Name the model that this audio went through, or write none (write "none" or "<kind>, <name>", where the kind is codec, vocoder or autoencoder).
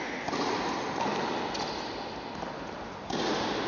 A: none